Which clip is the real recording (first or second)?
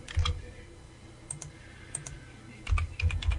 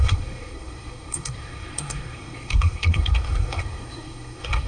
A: first